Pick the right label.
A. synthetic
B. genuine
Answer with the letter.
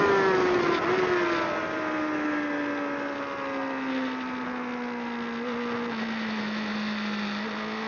B